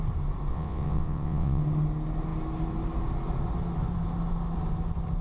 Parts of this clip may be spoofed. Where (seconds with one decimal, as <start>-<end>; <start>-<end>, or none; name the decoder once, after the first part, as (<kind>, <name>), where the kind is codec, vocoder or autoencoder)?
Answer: 0.5-1.6 (vocoder, WaveNeXt)